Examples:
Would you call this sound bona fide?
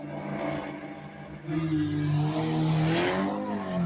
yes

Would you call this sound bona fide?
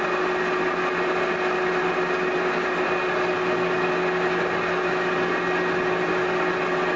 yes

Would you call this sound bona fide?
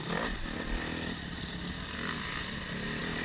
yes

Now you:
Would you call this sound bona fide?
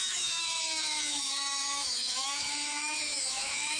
no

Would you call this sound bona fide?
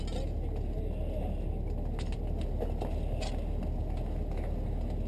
yes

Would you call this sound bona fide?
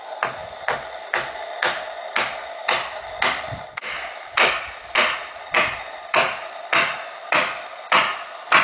yes